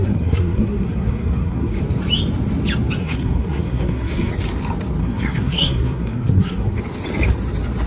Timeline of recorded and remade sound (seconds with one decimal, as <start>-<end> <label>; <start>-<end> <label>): 0.0-1.8 remade; 1.8-3.0 recorded; 3.0-4.3 remade; 4.3-5.0 recorded; 5.0-6.8 remade; 6.8-7.9 recorded